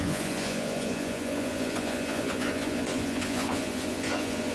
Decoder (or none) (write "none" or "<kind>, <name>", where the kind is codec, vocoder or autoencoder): vocoder, Vocos